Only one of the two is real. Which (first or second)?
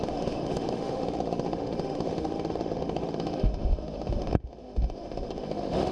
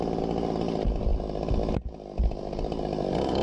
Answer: second